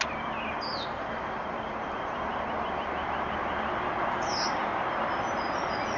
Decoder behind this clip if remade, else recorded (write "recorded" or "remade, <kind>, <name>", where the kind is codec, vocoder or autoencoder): recorded